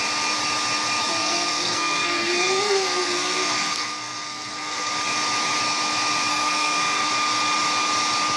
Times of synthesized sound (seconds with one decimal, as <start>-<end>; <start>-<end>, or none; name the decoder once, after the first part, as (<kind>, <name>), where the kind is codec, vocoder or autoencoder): 1.2-4.9 (codec, SNAC); 6.3-7.1